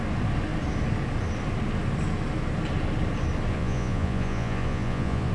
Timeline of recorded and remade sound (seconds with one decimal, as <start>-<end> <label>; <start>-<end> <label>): 0.0-3.5 recorded; 3.5-5.3 remade